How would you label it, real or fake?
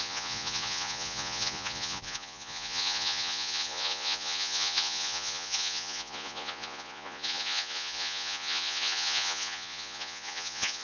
fake